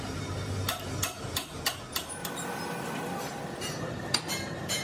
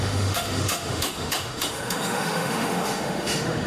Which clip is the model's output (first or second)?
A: second